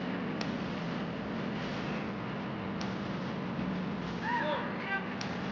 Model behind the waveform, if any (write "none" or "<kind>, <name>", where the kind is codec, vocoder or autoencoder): none